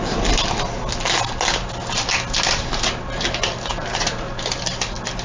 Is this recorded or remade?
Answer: recorded